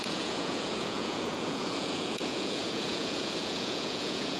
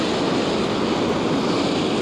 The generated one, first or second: first